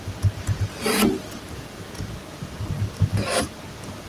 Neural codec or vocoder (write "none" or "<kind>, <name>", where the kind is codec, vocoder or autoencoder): none